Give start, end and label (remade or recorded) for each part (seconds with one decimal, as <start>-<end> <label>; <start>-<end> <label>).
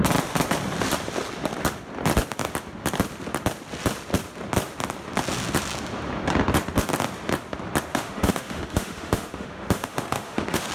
0.0-7.9 recorded; 7.9-10.7 remade